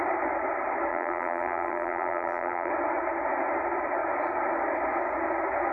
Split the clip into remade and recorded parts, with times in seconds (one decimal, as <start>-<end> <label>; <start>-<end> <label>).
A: 0.0-0.9 recorded; 0.9-2.7 remade; 2.7-5.7 recorded